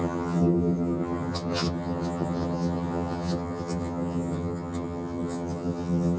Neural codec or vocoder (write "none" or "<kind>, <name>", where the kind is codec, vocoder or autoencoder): vocoder, HiFi-GAN